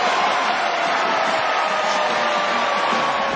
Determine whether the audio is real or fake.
real